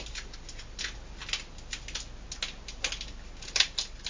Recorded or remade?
recorded